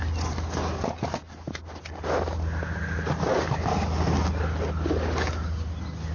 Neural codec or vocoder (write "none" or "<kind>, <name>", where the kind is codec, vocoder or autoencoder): none